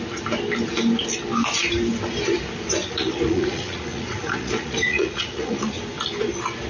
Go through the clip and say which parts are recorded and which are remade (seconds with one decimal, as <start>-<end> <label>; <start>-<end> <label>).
0.0-2.8 recorded; 2.8-5.8 remade; 5.8-6.7 recorded